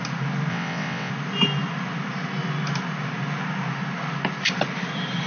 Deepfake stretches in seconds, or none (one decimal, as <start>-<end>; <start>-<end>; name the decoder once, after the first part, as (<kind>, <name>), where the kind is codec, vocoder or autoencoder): 0.5-1.1 (vocoder, WaveNeXt)